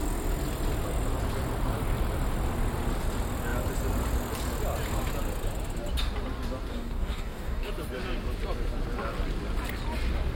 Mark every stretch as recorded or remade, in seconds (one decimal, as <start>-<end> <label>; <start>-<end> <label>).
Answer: 0.0-6.7 recorded; 6.7-7.7 remade; 7.7-10.4 recorded